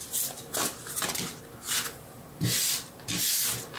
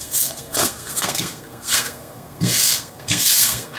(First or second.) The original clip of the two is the first